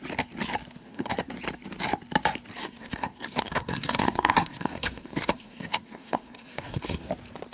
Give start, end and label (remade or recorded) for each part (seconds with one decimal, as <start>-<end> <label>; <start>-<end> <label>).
0.0-0.8 recorded; 0.8-1.3 remade; 1.3-2.6 recorded; 2.6-7.1 remade; 7.1-7.5 recorded